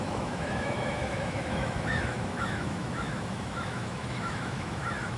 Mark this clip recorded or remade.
remade